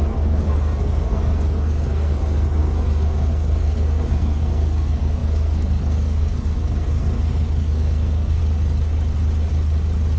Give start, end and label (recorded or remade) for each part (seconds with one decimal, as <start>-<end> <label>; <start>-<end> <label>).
0.0-8.4 remade; 8.4-10.2 recorded